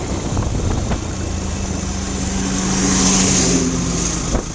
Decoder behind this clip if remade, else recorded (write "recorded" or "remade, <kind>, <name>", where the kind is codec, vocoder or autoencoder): recorded